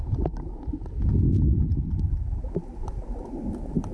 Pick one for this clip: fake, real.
real